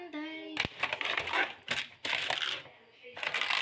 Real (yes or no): yes